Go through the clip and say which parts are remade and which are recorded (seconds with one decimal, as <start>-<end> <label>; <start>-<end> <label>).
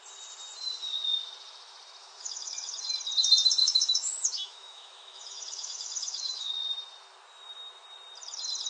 0.0-2.0 recorded; 2.0-2.7 remade; 2.7-3.6 recorded; 3.6-6.5 remade; 6.5-8.7 recorded